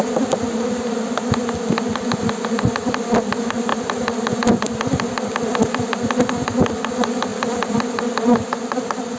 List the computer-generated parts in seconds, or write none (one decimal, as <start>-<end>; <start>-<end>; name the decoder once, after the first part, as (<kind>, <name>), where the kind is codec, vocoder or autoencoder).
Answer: 3.7-4.3 (vocoder, BigVGAN v2); 7.3-7.8

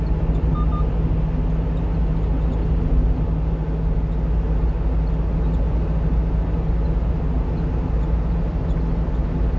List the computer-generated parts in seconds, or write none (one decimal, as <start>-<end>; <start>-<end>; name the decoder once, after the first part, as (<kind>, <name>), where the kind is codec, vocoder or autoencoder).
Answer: none

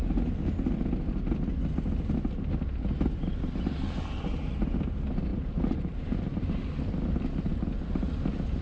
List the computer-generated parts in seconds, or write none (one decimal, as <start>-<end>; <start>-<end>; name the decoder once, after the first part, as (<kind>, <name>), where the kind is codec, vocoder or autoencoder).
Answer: 5.3-6.7 (vocoder, BigVGAN v2)

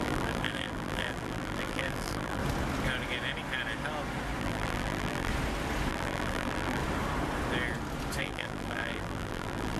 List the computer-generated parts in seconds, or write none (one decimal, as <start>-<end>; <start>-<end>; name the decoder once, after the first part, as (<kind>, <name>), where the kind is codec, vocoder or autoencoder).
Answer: 0.0-2.4 (vocoder, BigVGAN v2); 4.4-5.3; 5.9-6.8; 8.2-9.8